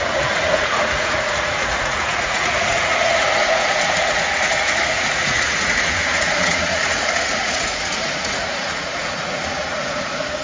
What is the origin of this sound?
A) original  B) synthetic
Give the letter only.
B